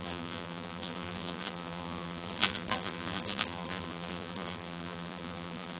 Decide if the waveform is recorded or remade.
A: remade